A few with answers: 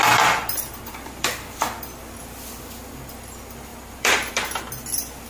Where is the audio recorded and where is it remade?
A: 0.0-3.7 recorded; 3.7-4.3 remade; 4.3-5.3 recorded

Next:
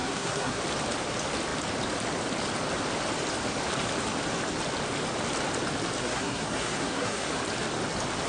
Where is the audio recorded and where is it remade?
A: 0.0-0.6 remade; 0.6-6.0 recorded; 6.0-7.4 remade; 7.4-8.3 recorded

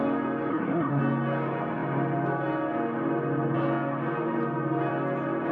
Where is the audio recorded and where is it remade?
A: 0.0-0.5 recorded; 0.5-1.0 remade; 1.0-5.5 recorded

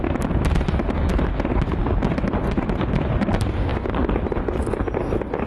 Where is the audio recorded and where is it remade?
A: 0.0-5.5 recorded